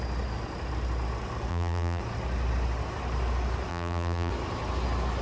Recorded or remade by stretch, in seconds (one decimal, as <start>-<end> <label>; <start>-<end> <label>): 0.0-1.5 recorded; 1.5-2.0 remade; 2.0-3.7 recorded; 3.7-4.3 remade; 4.3-5.2 recorded

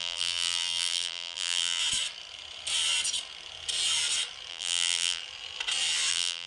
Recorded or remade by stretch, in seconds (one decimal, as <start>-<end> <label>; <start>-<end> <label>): 0.0-1.8 remade; 1.8-4.5 recorded; 4.5-5.2 remade; 5.2-6.1 recorded; 6.1-6.5 remade

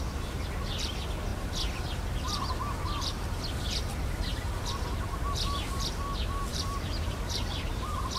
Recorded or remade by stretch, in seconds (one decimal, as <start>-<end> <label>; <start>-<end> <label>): 0.0-6.5 recorded; 6.5-8.2 remade